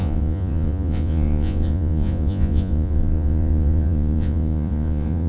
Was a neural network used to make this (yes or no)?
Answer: yes